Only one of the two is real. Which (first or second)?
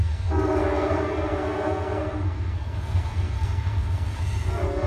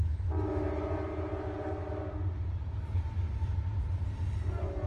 second